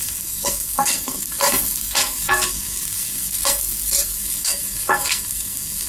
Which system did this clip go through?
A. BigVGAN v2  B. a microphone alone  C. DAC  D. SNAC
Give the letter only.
D